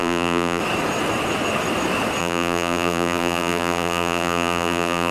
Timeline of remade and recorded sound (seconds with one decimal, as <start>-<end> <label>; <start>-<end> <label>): 0.0-0.6 remade; 0.6-2.2 recorded; 2.2-5.1 remade